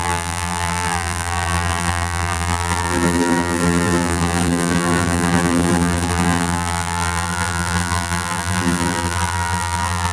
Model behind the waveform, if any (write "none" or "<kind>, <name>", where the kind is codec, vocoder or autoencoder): vocoder, BigVGAN v2